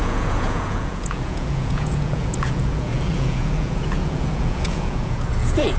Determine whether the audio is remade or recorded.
remade